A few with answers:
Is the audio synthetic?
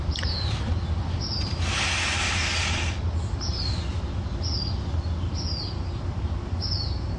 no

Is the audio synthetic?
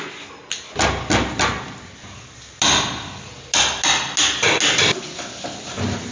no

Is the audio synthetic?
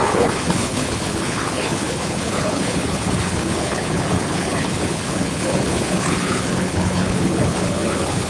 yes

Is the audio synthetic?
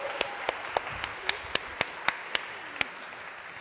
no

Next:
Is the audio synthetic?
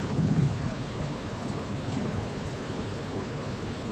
yes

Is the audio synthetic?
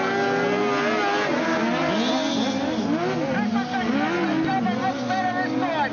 no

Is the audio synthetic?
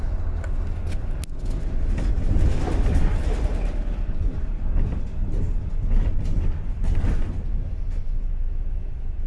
no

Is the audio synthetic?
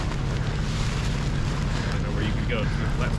no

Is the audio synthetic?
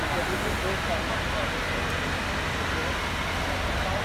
no